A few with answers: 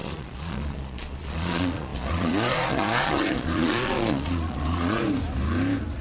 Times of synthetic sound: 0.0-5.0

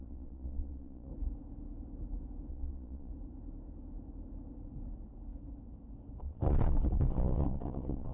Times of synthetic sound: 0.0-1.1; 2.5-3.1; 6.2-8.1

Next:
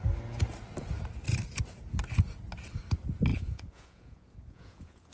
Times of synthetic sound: 3.3-5.1